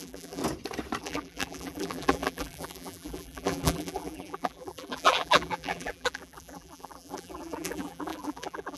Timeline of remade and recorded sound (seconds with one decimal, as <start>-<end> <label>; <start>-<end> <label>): 0.0-0.4 remade; 0.4-1.0 recorded; 1.0-8.8 remade